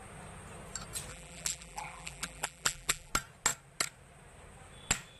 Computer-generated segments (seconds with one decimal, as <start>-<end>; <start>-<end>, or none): 1.1-3.1